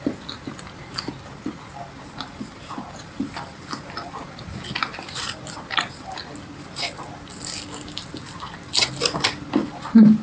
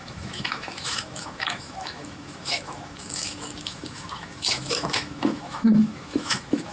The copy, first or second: second